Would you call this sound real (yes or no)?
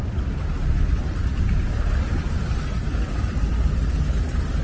yes